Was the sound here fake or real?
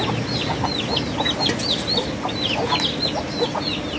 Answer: real